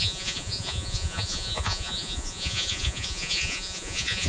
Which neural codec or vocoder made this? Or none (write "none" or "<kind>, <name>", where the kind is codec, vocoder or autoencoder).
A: vocoder, Vocos